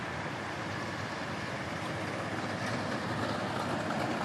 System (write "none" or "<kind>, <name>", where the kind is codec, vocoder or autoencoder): none